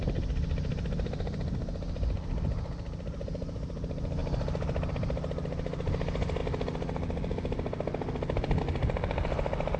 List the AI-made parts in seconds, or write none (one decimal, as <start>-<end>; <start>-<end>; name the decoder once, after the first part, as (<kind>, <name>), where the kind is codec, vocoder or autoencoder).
none

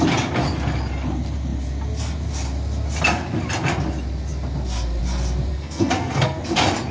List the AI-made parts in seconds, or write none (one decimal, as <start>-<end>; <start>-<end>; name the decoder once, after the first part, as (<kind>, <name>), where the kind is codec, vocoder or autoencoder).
5.5-6.4 (codec, SNAC)

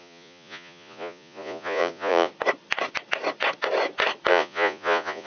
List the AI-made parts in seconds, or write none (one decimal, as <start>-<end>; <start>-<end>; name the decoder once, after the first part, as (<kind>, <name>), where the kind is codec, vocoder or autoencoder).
0.0-2.3 (vocoder, Vocos); 4.3-5.3

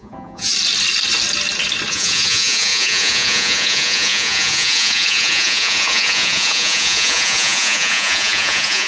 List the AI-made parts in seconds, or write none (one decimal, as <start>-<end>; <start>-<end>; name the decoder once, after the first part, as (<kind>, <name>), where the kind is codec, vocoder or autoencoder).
0.0-0.5 (vocoder, Vocos); 1.9-8.9

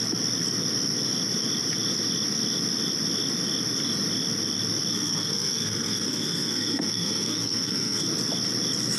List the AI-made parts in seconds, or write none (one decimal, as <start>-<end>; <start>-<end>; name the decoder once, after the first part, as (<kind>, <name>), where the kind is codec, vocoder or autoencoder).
4.9-8.0 (codec, SNAC)

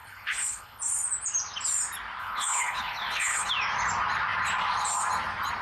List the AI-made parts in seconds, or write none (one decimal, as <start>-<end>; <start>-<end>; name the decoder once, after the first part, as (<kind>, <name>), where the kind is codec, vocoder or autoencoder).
0.0-0.8 (codec, HILCodec); 2.2-3.5

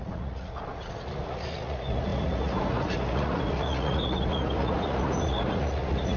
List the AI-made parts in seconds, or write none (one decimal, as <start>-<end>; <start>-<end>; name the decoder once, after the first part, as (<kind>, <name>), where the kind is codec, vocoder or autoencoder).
0.0-6.2 (vocoder, Vocos)